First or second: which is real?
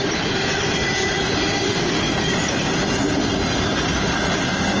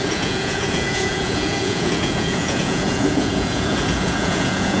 first